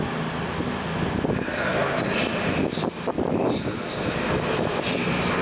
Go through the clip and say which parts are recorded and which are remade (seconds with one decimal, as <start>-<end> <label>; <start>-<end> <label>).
0.0-5.4 recorded